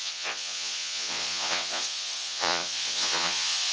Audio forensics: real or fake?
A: fake